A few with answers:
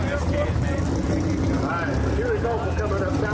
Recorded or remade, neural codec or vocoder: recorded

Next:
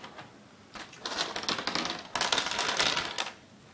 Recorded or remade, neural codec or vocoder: recorded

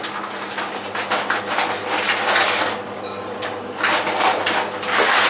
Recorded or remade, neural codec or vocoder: recorded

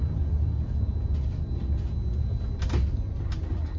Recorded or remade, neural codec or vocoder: recorded